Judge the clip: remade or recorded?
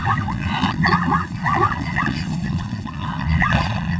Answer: remade